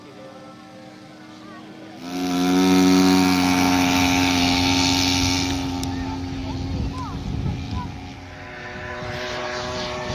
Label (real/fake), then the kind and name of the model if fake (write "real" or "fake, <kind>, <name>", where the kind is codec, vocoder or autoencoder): real